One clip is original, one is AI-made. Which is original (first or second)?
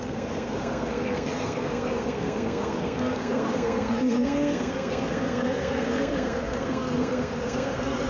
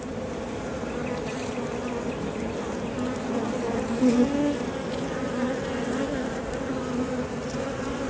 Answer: second